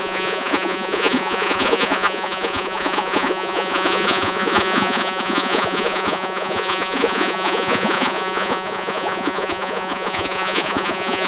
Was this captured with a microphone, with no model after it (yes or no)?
no